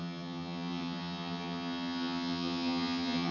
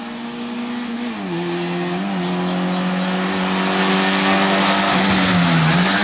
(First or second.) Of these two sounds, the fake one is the first